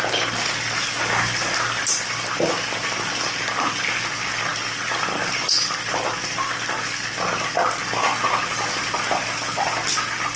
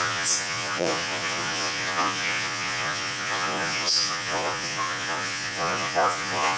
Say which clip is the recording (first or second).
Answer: first